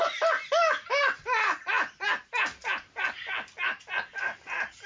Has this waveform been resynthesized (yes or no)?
no